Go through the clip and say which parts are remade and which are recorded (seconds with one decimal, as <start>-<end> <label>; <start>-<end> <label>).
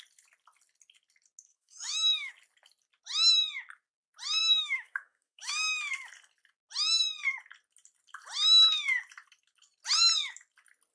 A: 0.0-1.5 recorded; 1.5-2.3 remade; 2.3-4.4 recorded; 4.4-5.8 remade; 5.8-10.9 recorded